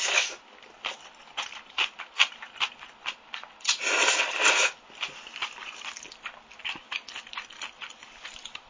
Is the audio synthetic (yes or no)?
yes